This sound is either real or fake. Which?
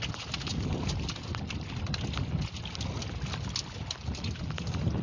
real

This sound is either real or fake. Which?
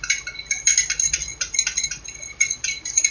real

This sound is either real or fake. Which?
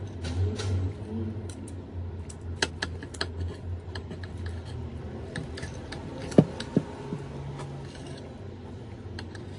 real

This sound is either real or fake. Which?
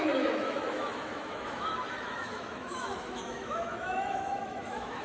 fake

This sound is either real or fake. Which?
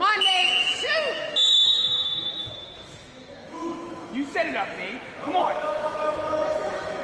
fake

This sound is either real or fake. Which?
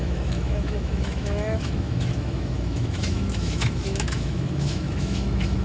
fake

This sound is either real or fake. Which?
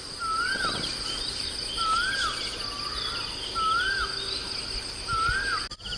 real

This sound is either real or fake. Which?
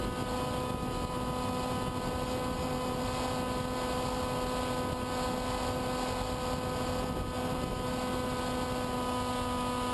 real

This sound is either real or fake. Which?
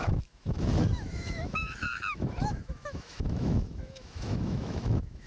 fake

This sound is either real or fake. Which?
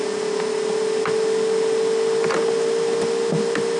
real